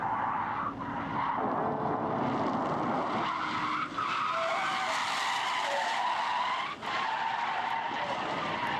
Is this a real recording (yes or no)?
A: yes